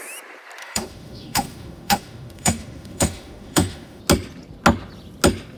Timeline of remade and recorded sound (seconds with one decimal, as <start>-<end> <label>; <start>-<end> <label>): 0.0-0.6 recorded; 0.6-4.0 remade; 4.0-5.6 recorded